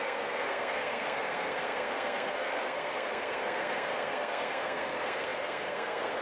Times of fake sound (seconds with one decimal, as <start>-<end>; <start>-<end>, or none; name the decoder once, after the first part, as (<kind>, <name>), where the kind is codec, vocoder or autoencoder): 0.0-6.2 (codec, SNAC)